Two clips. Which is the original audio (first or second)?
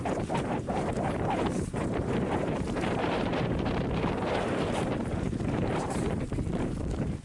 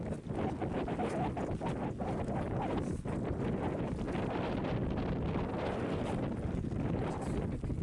second